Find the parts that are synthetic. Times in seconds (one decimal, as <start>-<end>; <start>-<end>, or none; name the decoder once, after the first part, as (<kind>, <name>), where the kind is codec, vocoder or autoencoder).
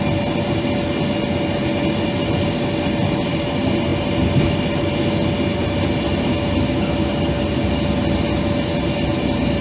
none